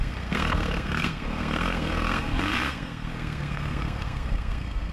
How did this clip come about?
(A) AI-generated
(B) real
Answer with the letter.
A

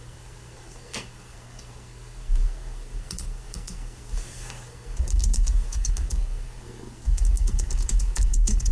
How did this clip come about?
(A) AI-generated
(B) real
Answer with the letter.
A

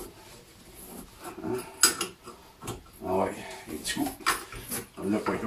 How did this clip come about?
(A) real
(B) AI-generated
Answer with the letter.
A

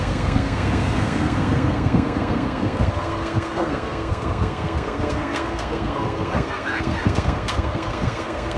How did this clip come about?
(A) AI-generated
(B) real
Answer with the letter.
A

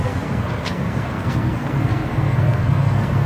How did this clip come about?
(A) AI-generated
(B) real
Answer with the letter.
A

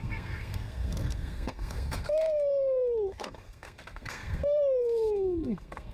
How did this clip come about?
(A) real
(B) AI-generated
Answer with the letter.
B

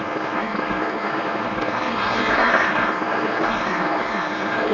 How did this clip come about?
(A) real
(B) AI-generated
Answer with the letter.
B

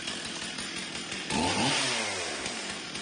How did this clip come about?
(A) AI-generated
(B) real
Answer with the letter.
B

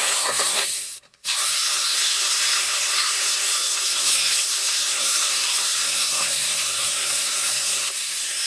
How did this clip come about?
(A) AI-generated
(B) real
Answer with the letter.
A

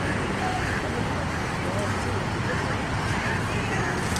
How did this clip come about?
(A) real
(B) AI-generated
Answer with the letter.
A